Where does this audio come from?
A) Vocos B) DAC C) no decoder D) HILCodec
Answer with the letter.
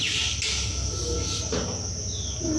C